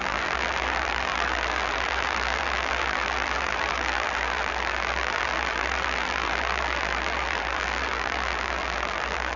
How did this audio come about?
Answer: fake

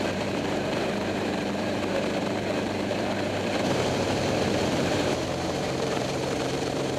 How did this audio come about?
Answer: fake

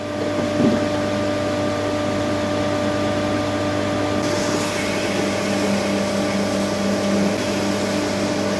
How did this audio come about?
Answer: real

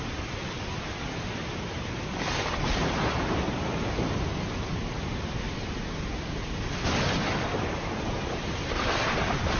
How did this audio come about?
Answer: real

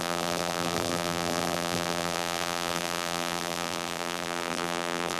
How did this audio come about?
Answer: fake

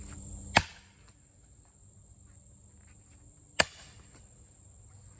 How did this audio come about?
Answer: real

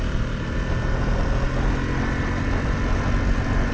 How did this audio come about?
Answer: real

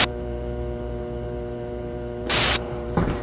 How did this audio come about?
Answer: fake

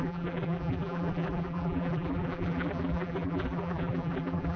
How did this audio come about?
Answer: fake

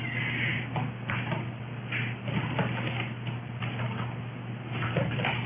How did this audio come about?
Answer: real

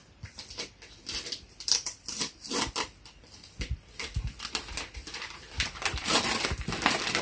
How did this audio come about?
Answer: fake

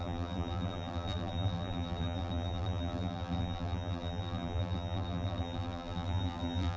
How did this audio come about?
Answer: fake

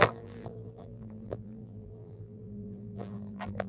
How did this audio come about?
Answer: fake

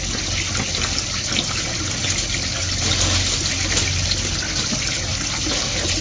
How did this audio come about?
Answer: real